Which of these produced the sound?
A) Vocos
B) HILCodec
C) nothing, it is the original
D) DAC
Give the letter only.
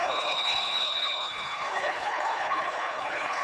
B